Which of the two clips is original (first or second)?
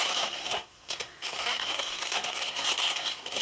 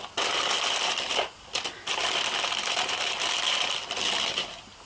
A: second